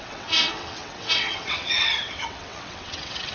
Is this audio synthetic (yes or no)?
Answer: yes